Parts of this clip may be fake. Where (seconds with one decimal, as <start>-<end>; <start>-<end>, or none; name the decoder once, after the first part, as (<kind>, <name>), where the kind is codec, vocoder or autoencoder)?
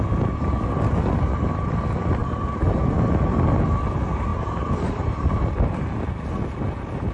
2.2-2.8 (vocoder, BigVGAN v2); 4.3-5.8